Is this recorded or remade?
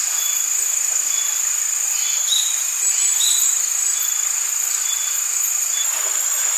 recorded